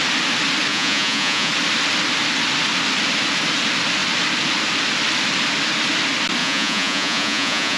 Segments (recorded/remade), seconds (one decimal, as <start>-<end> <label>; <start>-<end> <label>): 0.0-0.7 recorded; 0.7-1.5 remade; 1.5-6.4 recorded; 6.4-7.8 remade